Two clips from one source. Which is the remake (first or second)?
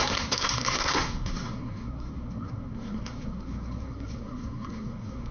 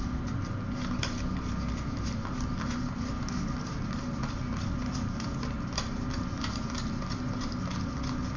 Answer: first